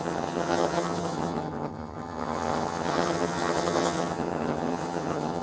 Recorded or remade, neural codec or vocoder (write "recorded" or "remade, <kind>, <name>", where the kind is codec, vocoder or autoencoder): remade, vocoder, HiFi-GAN